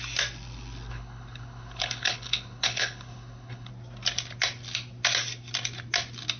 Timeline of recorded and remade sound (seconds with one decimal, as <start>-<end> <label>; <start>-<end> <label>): 0.0-0.9 recorded; 0.9-3.7 remade; 3.7-6.4 recorded